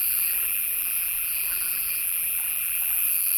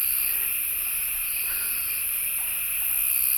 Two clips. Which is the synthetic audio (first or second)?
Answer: first